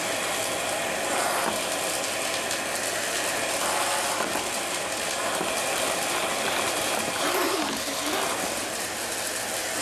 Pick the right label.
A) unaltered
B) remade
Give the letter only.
A